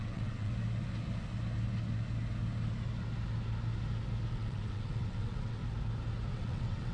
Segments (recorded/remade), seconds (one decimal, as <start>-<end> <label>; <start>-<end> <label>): 0.0-0.5 remade; 0.5-4.3 recorded; 4.3-5.6 remade; 5.6-6.3 recorded; 6.3-6.9 remade